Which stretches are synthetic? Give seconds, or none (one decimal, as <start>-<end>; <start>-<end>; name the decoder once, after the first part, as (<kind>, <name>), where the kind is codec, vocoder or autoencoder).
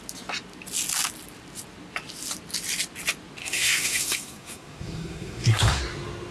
3.4-5.8 (codec, SNAC)